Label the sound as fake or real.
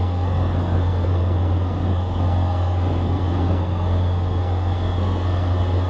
fake